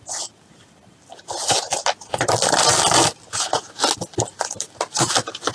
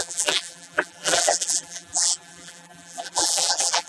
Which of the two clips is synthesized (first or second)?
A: second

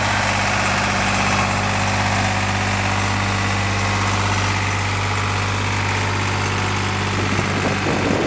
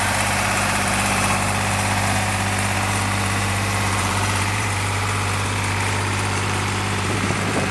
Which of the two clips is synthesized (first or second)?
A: second